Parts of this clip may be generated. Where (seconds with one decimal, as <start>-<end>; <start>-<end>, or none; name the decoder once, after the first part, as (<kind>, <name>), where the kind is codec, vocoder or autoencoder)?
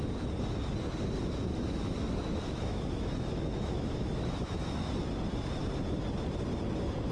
1.5-4.9 (autoencoder, DAC-VAE)